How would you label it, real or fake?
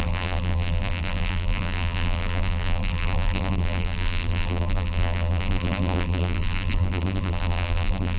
fake